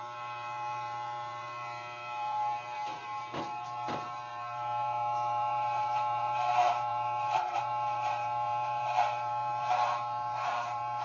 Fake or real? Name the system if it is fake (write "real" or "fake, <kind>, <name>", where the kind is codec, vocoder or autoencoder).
fake, vocoder, BigVGAN v2